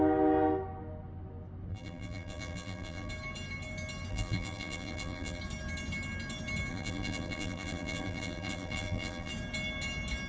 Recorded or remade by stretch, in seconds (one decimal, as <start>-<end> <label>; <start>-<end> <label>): 0.0-1.7 recorded; 1.7-3.1 remade; 3.1-4.1 recorded; 4.1-5.4 remade; 5.4-6.7 recorded; 6.7-9.3 remade; 9.3-10.3 recorded